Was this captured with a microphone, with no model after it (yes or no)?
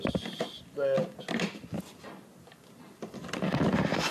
yes